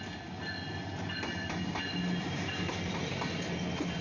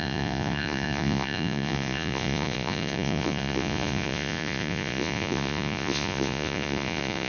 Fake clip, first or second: second